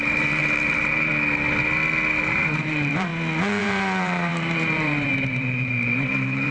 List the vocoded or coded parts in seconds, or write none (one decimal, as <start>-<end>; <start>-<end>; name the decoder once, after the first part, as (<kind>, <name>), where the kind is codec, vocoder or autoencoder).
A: 0.0-1.1 (vocoder, BigVGAN v2); 2.2-3.1; 3.6-6.5